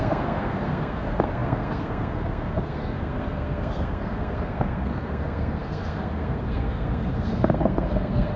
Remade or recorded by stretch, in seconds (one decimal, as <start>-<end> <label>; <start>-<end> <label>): 0.0-8.4 remade